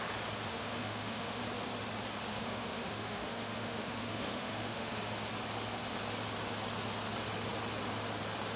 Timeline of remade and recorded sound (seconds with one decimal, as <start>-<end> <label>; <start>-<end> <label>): 0.0-0.5 recorded; 0.5-1.4 remade; 1.4-2.3 recorded; 2.3-5.0 remade; 5.0-8.6 recorded